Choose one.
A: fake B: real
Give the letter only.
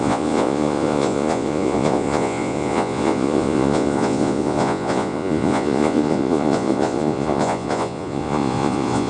A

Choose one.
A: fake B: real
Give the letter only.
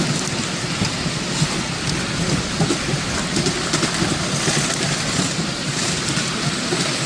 B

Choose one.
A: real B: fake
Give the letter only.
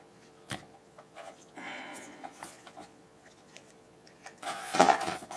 B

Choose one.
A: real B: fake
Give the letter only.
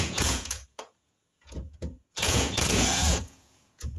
B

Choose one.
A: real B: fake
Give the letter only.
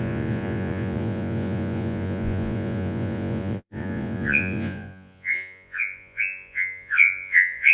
B